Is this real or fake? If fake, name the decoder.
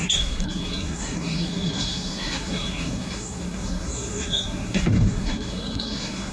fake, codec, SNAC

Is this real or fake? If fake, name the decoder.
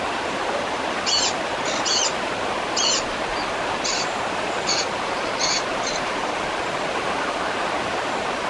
real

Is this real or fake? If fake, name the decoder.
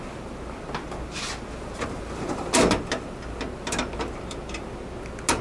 real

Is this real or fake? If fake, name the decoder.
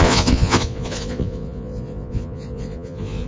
fake, vocoder, Vocos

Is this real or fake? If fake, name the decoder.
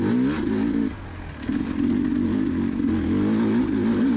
real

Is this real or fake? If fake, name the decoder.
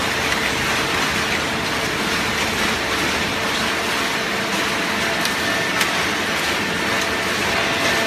real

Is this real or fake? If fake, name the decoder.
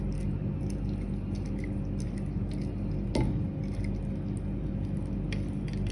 real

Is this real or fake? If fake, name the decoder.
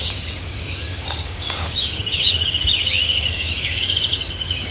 fake, codec, DAC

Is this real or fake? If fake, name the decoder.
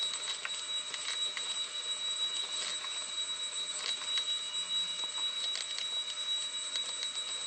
real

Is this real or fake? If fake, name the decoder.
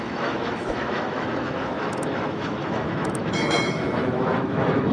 fake, autoencoder, DAC-VAE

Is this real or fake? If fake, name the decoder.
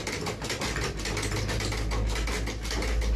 real